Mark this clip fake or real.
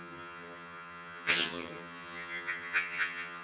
fake